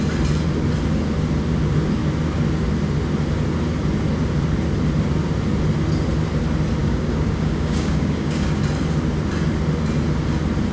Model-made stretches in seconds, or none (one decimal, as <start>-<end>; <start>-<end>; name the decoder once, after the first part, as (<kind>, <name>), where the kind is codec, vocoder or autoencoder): 6.8-8.6 (codec, DAC)